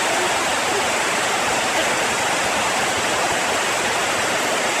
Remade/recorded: recorded